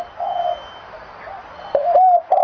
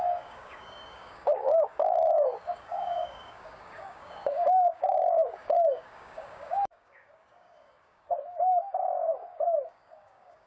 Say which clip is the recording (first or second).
first